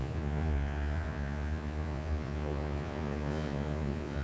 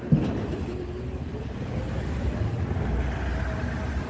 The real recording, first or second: second